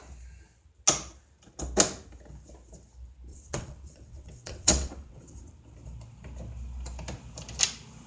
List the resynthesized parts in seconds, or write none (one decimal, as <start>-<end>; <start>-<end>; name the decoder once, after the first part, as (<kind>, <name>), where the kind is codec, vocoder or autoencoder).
3.3-5.4 (vocoder, WaveNeXt)